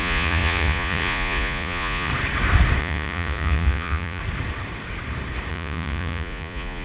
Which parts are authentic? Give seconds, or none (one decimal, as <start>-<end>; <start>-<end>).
2.1-2.8; 4.2-5.5